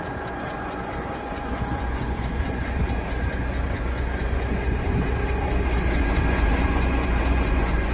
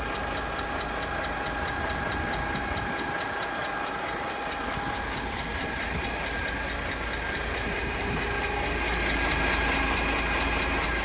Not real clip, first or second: first